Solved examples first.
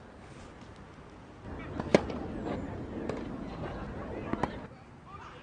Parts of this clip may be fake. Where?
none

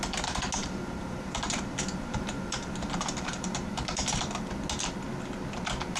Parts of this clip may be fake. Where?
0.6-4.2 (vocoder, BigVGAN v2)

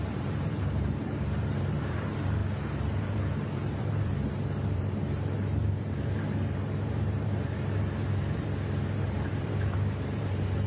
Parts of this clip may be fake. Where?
0.0-10.7 (vocoder, BigVGAN v2)

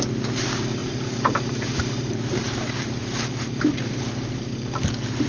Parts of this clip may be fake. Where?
0.8-4.0 (vocoder, BigVGAN v2)